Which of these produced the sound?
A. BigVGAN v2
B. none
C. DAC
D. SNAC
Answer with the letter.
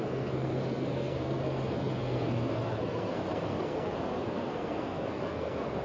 D